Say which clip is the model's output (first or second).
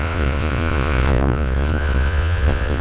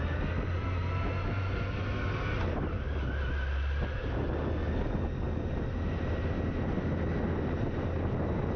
first